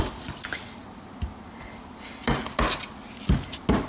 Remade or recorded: recorded